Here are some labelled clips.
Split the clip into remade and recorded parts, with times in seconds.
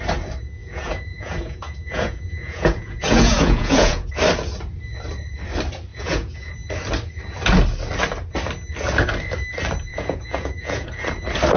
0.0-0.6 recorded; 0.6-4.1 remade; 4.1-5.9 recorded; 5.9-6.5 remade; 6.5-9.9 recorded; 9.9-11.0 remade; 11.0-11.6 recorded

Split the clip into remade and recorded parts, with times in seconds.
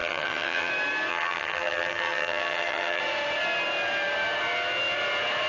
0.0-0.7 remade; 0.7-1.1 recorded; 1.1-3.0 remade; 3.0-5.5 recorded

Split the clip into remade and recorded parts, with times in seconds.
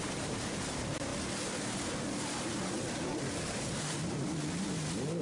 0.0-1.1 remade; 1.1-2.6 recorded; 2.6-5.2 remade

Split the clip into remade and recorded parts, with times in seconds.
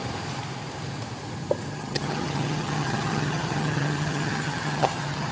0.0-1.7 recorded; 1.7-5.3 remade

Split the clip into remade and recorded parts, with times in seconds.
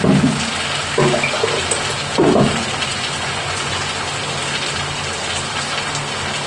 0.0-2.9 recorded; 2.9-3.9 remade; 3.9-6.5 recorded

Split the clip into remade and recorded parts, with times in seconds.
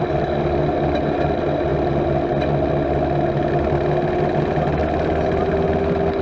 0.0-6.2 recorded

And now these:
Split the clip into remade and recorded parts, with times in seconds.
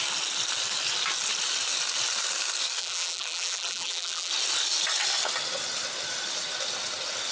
0.0-2.8 recorded; 2.8-4.3 remade; 4.3-7.3 recorded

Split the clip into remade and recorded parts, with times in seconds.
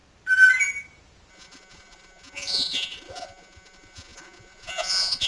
0.0-1.3 recorded; 1.3-5.3 remade